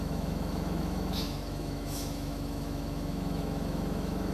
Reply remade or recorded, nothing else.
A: remade